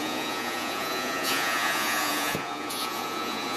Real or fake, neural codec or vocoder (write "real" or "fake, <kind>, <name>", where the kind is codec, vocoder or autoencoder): fake, vocoder, Vocos